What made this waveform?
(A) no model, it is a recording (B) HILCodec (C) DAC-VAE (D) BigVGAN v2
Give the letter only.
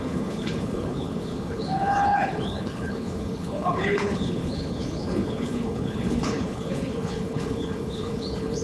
B